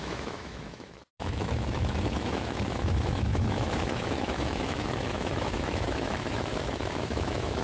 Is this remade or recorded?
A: remade